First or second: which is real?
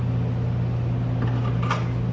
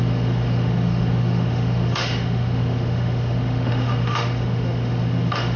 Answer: first